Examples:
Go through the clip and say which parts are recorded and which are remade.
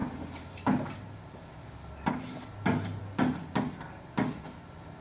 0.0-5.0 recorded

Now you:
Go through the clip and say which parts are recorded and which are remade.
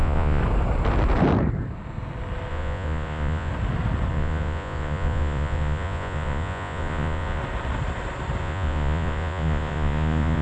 0.0-0.4 remade; 0.4-2.5 recorded; 2.5-3.5 remade; 3.5-4.1 recorded; 4.1-7.4 remade; 7.4-8.4 recorded; 8.4-10.4 remade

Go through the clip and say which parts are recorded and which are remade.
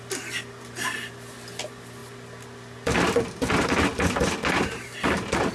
0.0-5.5 recorded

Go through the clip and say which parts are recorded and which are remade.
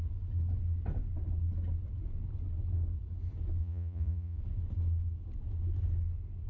0.0-3.6 recorded; 3.6-4.4 remade; 4.4-6.5 recorded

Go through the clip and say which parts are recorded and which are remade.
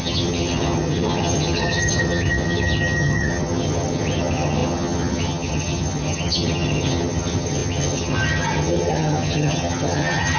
0.0-10.4 remade